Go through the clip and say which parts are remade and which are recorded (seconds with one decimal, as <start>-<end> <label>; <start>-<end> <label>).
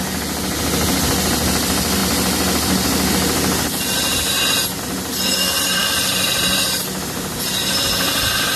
0.0-5.8 recorded; 5.8-6.8 remade; 6.8-8.6 recorded